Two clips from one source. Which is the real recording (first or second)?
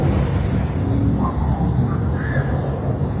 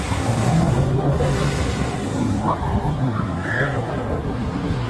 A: first